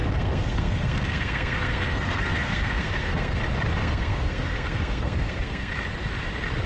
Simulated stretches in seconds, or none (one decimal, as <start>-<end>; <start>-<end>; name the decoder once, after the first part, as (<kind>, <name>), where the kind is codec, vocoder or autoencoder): 0.0-3.4 (codec, SNAC); 3.8-5.7